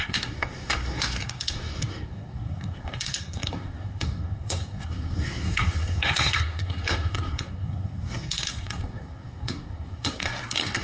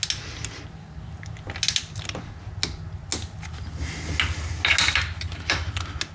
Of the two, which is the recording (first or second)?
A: second